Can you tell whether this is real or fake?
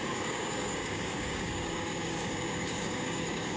fake